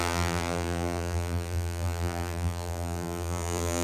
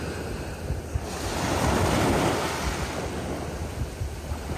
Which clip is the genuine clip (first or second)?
second